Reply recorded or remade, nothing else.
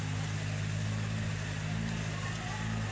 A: recorded